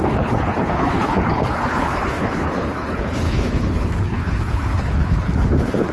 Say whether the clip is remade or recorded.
remade